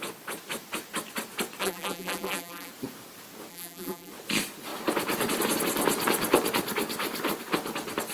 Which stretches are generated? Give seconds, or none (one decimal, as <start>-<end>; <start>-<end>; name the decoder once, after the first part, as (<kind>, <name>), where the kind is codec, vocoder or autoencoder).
1.6-2.7 (vocoder, BigVGAN v2); 3.5-4.1